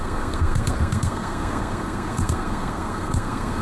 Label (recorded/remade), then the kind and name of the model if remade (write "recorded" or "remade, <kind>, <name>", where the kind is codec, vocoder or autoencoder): remade, codec, SNAC